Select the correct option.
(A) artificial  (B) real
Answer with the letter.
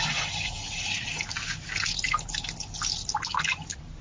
B